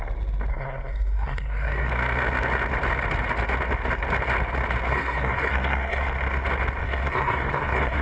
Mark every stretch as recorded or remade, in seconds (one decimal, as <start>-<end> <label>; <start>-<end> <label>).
0.0-0.5 recorded; 0.5-1.9 remade; 1.9-4.9 recorded; 4.9-6.1 remade; 6.1-6.8 recorded; 6.8-8.0 remade